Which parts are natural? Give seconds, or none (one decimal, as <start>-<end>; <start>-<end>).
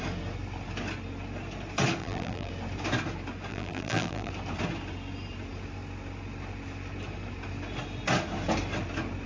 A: 0.0-2.0; 2.5-3.5; 4.3-9.3